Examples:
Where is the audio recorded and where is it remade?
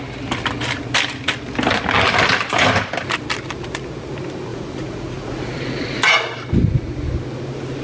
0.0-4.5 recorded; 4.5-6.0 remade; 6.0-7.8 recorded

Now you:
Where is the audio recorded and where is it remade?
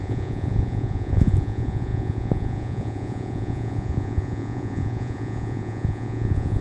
0.0-6.6 remade